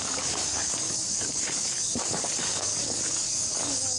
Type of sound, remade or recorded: remade